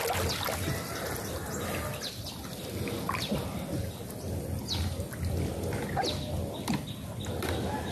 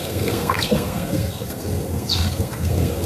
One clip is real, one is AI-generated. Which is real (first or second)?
first